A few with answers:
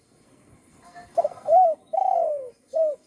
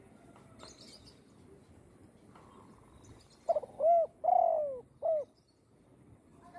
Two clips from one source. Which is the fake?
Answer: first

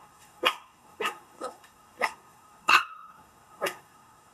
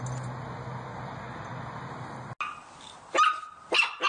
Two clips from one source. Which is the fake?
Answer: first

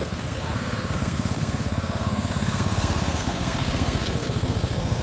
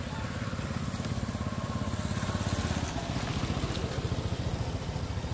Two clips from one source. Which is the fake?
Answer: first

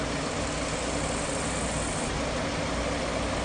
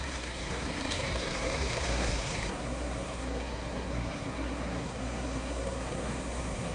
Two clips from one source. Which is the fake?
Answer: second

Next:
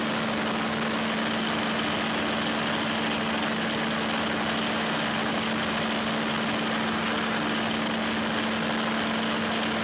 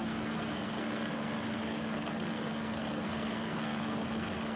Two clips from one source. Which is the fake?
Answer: second